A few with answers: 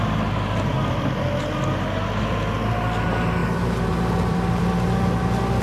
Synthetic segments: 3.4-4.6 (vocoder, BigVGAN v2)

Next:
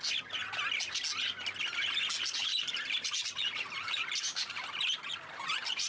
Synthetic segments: 2.4-5.9 (vocoder, BigVGAN v2)

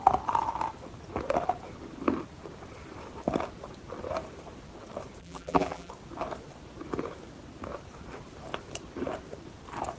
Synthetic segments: 5.2-5.9 (vocoder, BigVGAN v2)